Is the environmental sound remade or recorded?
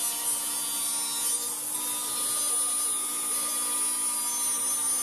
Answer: recorded